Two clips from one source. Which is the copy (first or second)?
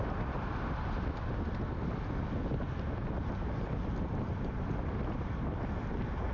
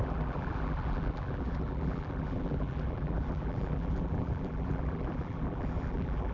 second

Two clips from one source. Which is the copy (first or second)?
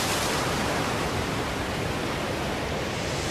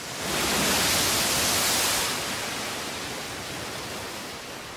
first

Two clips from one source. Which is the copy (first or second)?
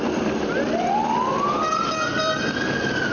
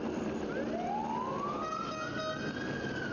first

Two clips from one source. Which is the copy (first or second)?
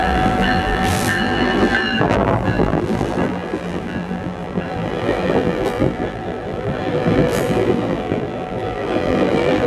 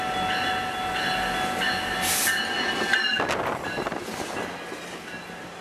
first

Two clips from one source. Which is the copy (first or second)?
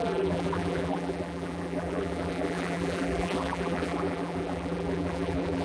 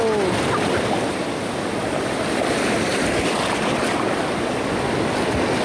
first